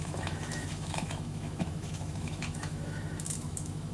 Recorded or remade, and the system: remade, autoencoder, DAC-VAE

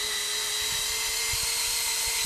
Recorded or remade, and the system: recorded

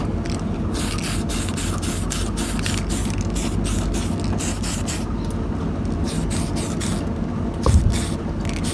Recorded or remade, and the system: recorded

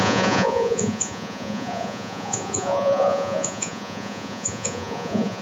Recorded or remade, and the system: remade, vocoder, Vocos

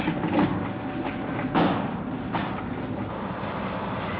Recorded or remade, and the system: recorded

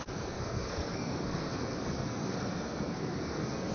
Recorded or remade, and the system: remade, codec, SNAC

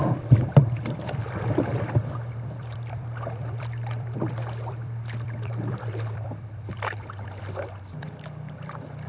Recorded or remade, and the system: remade, vocoder, BigVGAN v2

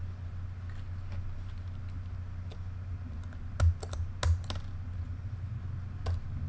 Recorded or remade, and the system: recorded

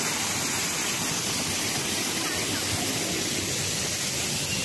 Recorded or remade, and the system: recorded